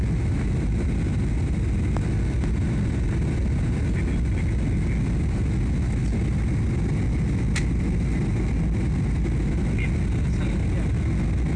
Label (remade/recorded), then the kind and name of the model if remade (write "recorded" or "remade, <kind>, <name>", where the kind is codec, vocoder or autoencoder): recorded